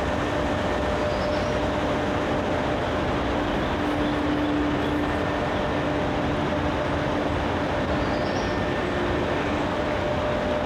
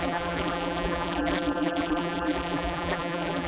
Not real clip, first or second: second